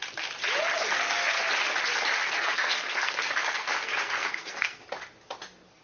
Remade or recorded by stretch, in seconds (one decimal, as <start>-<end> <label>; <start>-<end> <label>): 0.0-0.8 recorded; 0.8-1.4 remade; 1.4-2.2 recorded; 2.2-4.8 remade; 4.8-5.8 recorded